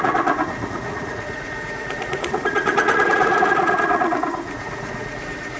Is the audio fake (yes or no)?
yes